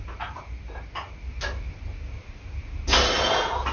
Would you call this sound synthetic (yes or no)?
no